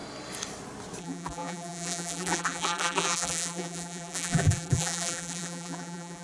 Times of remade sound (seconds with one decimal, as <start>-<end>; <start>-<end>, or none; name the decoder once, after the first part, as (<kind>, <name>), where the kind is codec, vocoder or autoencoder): 1.0-6.2 (vocoder, BigVGAN v2)